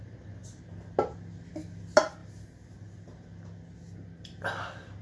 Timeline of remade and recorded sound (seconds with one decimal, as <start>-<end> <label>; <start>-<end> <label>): 0.0-5.0 recorded